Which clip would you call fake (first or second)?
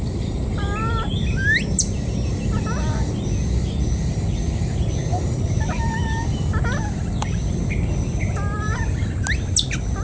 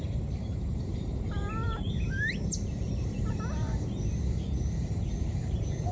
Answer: second